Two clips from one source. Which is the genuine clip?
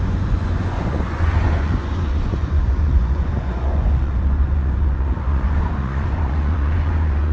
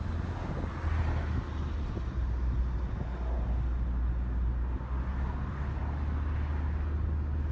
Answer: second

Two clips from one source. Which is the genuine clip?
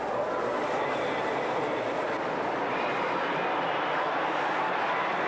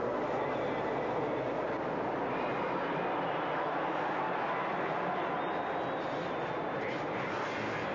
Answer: second